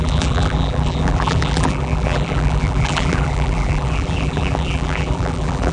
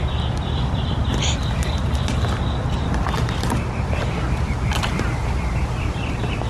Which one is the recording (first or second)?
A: second